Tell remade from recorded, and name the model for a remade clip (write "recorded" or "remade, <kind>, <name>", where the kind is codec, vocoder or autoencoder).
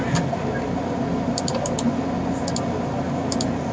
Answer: recorded